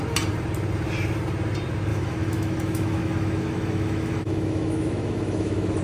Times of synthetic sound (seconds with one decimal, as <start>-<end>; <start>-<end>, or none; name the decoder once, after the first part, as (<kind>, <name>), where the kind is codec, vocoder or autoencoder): 1.9-5.8 (autoencoder, DAC-VAE)